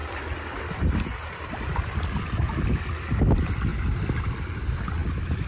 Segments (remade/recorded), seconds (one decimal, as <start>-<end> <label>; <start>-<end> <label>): 0.0-3.1 remade; 3.1-3.7 recorded; 3.7-4.5 remade; 4.5-5.5 recorded